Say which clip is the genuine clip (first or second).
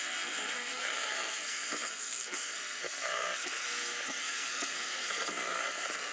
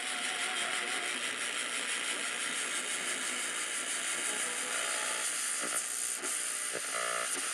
second